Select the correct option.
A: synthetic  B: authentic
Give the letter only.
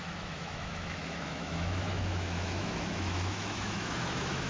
A